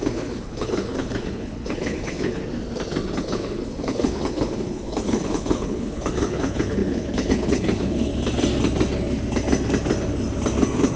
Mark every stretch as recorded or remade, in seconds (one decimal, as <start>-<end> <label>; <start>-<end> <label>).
0.0-2.4 remade; 2.4-3.2 recorded; 3.2-8.1 remade; 8.1-11.0 recorded